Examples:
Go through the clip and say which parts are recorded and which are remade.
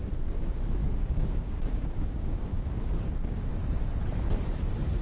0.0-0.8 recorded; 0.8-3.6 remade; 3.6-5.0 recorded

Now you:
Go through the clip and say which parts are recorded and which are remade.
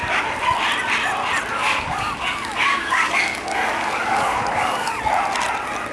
0.0-1.5 recorded; 1.5-5.0 remade; 5.0-5.9 recorded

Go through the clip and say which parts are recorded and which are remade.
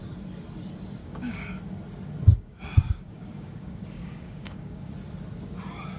0.0-1.0 recorded; 1.0-1.6 remade; 1.6-2.3 recorded; 2.3-4.9 remade; 4.9-6.0 recorded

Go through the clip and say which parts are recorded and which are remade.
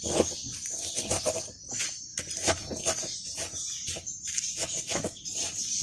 0.0-4.6 recorded; 4.6-5.3 remade; 5.3-5.8 recorded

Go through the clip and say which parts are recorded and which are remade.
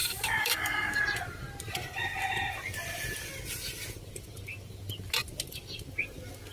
0.0-1.0 remade; 1.0-6.5 recorded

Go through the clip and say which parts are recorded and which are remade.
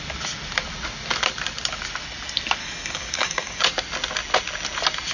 0.0-2.6 recorded; 2.6-3.6 remade; 3.6-5.1 recorded